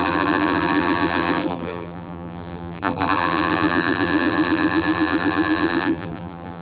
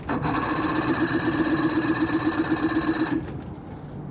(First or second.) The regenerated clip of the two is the first